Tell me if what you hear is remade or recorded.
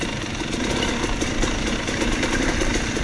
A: remade